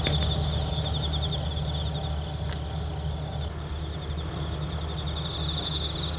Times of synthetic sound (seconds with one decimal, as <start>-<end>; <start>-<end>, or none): none